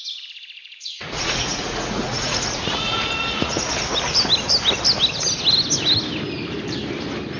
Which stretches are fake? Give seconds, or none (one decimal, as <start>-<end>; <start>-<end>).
0.6-3.7